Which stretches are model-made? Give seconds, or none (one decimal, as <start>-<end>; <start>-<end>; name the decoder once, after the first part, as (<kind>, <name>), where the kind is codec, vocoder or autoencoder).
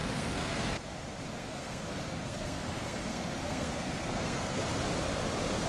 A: 0.0-0.8 (codec, SNAC); 1.4-4.8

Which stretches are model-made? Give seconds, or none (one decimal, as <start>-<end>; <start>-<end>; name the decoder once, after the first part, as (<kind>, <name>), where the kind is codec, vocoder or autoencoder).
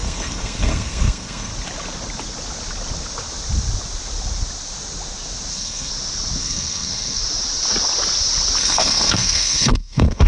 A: 0.0-1.5 (codec, SNAC); 5.5-5.9; 6.4-7.2; 8.6-10.3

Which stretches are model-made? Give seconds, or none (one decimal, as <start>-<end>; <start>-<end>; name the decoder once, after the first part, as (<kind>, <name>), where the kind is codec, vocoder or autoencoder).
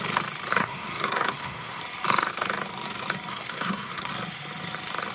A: 0.6-1.8 (codec, SNAC); 3.3-4.1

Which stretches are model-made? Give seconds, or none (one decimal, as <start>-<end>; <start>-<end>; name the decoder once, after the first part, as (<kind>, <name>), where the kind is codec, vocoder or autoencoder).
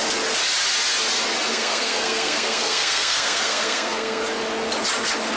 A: 1.5-4.2 (codec, SNAC)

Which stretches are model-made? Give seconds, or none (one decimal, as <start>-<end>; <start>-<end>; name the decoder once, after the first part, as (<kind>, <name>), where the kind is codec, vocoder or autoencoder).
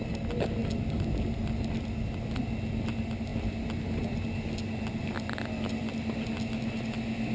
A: none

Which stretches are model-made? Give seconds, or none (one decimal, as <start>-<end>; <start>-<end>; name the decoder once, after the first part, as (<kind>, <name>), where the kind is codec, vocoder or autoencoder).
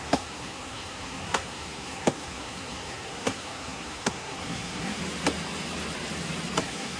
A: 0.0-5.0 (codec, SNAC); 6.6-7.0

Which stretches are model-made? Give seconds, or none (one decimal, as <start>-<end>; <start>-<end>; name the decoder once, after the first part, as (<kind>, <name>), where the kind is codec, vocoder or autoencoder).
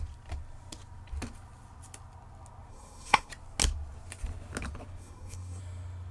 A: 2.7-3.3 (codec, SNAC); 5.0-5.6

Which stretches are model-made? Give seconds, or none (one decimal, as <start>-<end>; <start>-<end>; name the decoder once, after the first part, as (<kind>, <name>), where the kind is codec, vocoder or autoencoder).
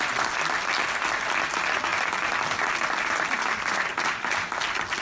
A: none